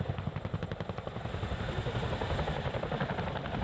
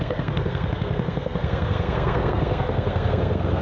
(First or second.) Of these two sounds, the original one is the first